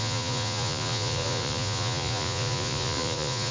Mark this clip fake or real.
fake